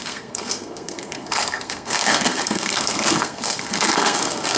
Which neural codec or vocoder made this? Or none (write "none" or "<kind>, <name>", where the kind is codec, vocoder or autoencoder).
codec, SNAC